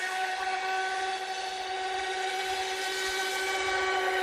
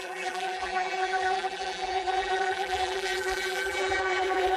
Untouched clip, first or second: first